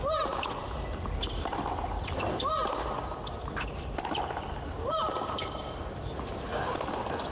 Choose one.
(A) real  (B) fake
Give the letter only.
B